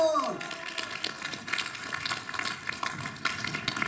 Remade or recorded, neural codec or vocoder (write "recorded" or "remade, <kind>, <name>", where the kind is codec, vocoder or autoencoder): recorded